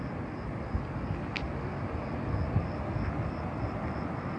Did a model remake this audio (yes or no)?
no